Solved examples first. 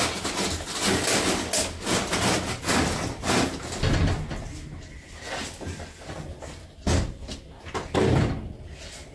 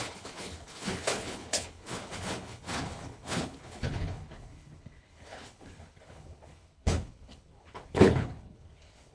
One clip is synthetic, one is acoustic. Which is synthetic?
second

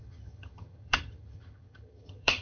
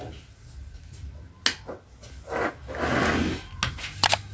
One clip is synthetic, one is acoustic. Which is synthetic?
first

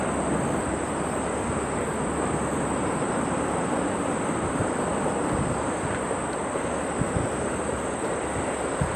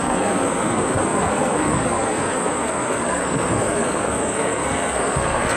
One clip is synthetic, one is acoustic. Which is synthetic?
second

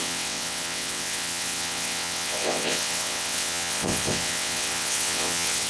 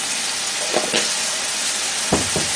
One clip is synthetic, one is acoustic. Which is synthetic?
first